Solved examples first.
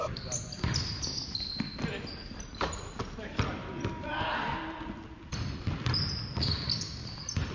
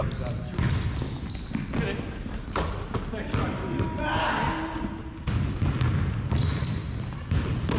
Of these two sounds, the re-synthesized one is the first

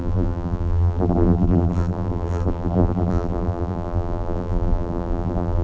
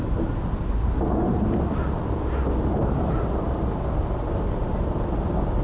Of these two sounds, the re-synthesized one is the first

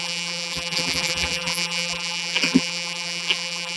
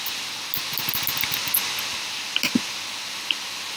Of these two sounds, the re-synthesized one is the first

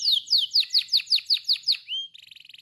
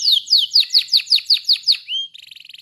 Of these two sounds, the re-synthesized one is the second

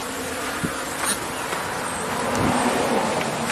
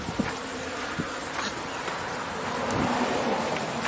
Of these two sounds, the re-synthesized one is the second